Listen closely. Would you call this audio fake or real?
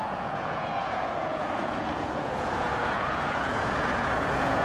fake